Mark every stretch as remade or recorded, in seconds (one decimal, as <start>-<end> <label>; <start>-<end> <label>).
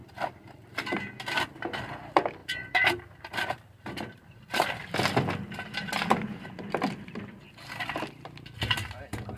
0.0-1.0 remade; 1.0-2.4 recorded; 2.4-6.5 remade; 6.5-9.4 recorded